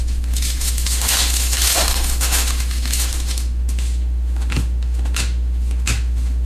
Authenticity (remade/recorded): remade